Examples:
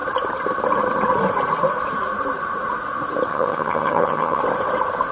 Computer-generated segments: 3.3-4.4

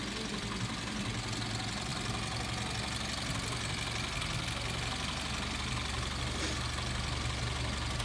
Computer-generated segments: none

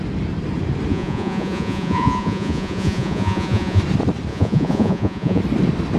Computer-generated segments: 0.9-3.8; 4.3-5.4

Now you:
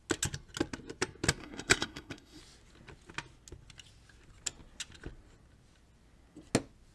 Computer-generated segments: 1.4-2.4